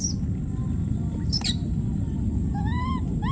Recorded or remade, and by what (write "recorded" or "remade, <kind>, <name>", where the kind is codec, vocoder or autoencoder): recorded